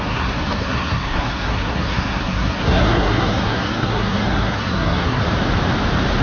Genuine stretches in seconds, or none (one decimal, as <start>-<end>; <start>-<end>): 5.2-6.2